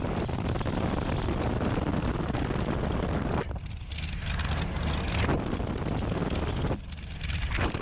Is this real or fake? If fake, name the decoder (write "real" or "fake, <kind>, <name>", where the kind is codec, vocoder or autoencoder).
real